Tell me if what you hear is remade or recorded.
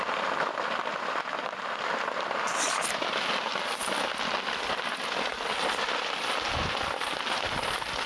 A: recorded